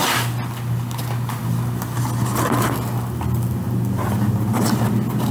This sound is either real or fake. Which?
real